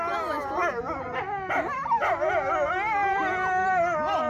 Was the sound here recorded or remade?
recorded